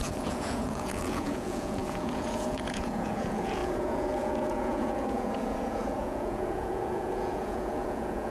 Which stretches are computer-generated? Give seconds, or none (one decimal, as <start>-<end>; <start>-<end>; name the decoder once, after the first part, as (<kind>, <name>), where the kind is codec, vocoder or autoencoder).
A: 0.0-8.3 (vocoder, Vocos)